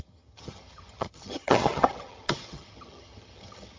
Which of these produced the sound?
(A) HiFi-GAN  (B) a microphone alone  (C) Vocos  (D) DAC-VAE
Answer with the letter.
A